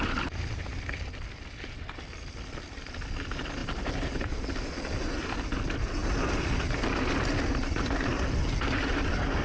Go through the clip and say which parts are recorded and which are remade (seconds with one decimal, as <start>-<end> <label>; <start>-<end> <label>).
0.0-9.4 recorded